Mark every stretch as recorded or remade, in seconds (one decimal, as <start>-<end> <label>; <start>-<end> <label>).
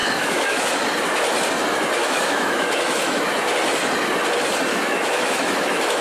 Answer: 0.0-0.6 remade; 0.6-2.0 recorded; 2.0-3.2 remade; 3.2-4.7 recorded; 4.7-6.0 remade